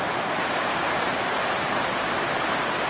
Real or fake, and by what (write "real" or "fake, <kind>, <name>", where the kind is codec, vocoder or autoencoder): fake, vocoder, BigVGAN v2